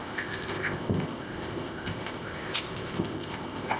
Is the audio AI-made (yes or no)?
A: yes